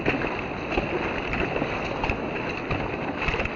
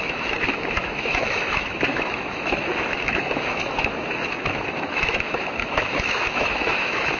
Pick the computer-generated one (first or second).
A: second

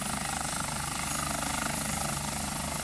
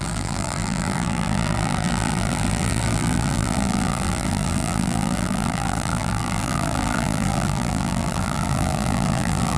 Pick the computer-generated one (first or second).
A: second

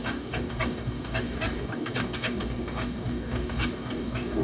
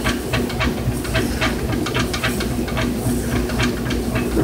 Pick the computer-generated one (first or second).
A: first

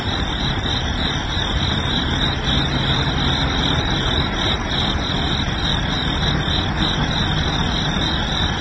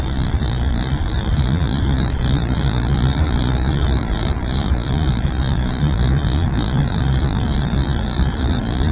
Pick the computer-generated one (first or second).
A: second